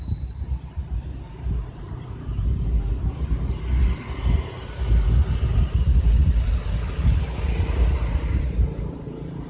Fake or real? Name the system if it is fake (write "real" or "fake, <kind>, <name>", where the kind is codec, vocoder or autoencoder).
real